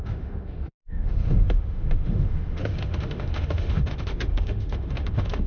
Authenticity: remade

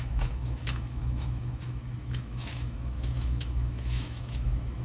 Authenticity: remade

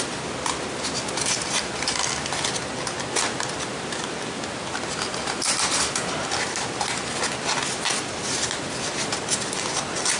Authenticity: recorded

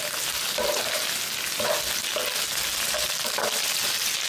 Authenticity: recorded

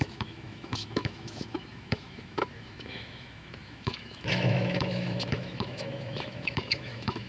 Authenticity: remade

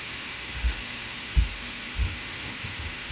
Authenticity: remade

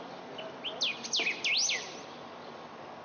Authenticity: recorded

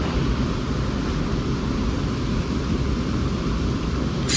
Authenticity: recorded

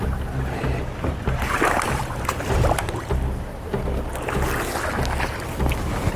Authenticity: recorded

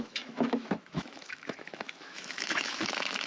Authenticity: remade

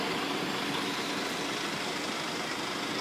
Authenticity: recorded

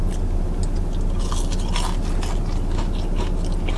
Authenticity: recorded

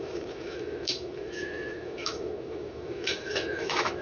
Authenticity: remade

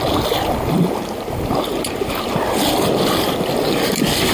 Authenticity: recorded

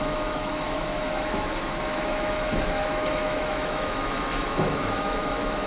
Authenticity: remade